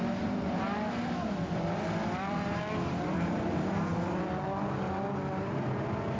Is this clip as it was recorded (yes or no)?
yes